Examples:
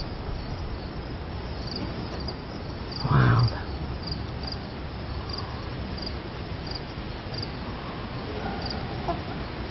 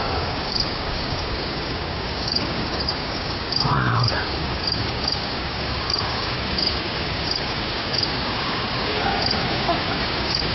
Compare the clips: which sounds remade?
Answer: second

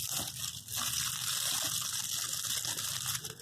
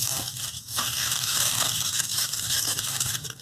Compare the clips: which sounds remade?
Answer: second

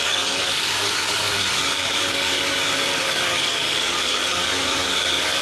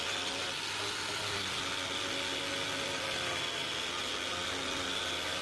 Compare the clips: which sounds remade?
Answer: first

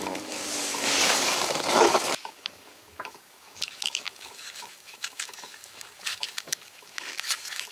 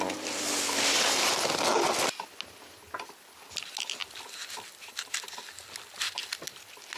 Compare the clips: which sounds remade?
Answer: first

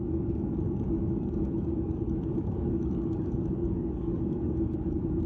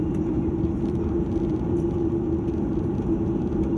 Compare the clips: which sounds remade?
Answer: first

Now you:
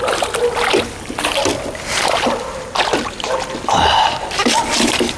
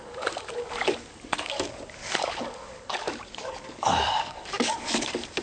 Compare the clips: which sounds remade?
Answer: second